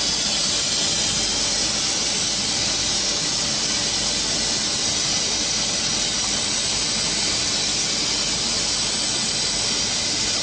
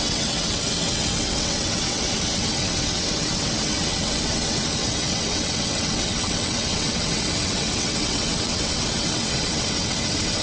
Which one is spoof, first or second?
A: second